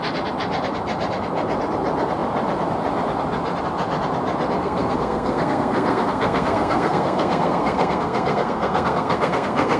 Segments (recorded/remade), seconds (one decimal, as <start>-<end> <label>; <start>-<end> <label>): 0.0-4.6 recorded; 4.6-9.8 remade